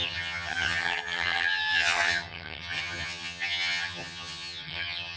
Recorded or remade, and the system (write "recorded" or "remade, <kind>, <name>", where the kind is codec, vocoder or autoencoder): remade, vocoder, HiFi-GAN